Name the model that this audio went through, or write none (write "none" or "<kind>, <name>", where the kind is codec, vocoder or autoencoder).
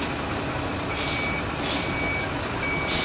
none